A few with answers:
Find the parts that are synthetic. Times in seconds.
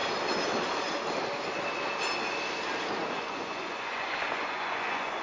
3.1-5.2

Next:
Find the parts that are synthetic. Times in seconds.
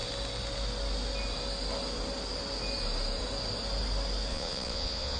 4.3-5.2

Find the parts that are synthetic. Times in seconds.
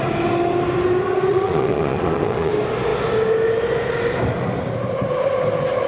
1.3-2.5